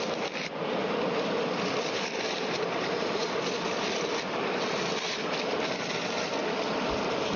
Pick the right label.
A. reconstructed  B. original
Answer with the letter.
B